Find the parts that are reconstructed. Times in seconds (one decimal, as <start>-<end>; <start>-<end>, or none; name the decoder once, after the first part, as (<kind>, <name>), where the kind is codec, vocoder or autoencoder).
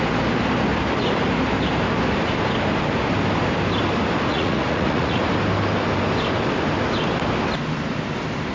4.3-5.2 (vocoder, Vocos)